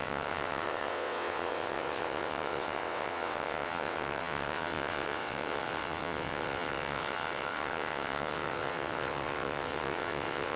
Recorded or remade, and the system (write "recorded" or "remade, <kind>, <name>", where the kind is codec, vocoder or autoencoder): remade, vocoder, WaveNeXt